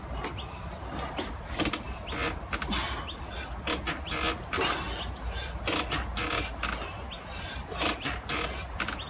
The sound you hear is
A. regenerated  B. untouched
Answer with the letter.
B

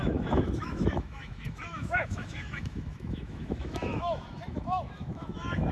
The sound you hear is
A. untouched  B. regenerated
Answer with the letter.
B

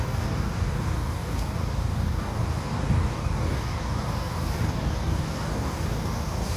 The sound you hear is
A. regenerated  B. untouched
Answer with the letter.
A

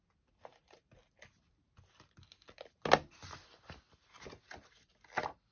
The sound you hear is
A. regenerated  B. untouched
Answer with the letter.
B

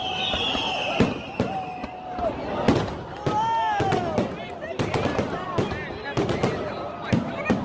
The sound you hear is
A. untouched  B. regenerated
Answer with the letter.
A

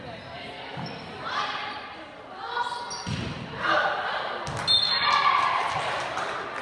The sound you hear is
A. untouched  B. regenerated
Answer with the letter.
A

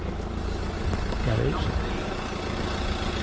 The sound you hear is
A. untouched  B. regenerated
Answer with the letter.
A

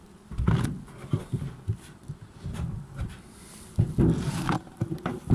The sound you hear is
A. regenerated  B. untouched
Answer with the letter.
B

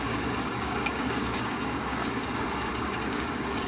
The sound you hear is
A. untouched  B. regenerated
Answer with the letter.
B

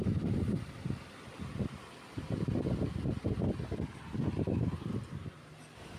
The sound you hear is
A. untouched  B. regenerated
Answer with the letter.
A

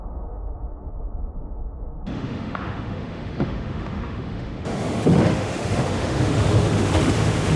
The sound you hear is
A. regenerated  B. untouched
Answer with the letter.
A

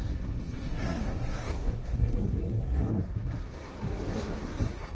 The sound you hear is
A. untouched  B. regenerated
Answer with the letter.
B